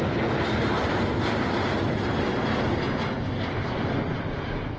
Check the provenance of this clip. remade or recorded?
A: recorded